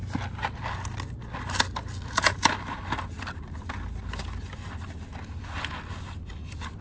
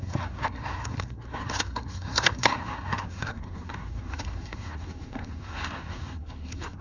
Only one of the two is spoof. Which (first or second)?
second